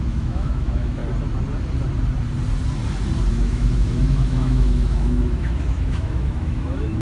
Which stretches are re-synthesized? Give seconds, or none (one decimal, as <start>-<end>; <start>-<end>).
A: 0.0-1.0; 3.3-7.0